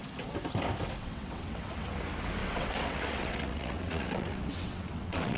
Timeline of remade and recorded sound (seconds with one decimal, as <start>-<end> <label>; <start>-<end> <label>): 0.0-1.0 recorded; 1.0-2.0 remade; 2.0-2.4 recorded; 2.4-5.4 remade